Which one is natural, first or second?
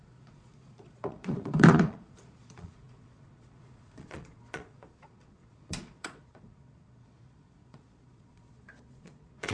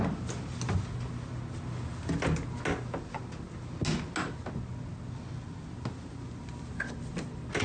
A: second